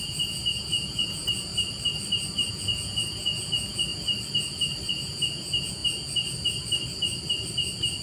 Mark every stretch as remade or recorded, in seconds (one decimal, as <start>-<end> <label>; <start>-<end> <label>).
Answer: 0.0-1.5 remade; 1.5-2.5 recorded; 2.5-3.9 remade; 3.9-4.9 recorded; 4.9-5.8 remade; 5.8-8.0 recorded